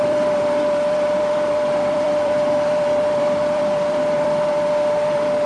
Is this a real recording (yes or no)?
no